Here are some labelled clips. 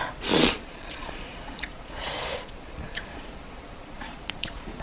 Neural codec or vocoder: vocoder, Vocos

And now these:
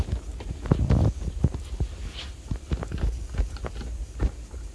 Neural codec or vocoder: none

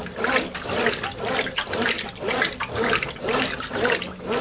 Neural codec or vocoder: none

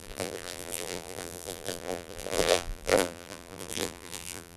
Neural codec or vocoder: vocoder, BigVGAN v2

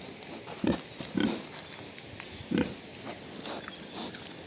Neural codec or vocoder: none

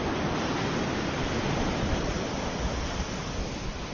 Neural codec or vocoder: none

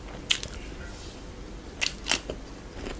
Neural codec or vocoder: none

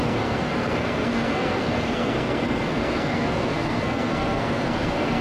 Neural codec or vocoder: codec, SNAC